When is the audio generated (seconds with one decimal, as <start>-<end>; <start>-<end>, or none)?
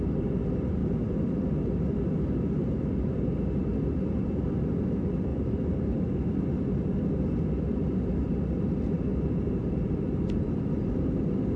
0.8-1.3; 2.6-3.3; 5.3-6.0; 9.1-10.7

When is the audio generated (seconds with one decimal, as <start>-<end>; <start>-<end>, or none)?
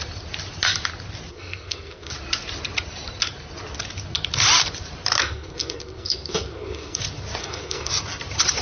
1.3-2.1; 5.2-7.0; 7.4-7.9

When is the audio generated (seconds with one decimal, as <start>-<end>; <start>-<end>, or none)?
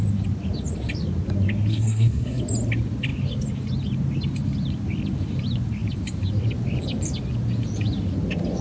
1.7-2.4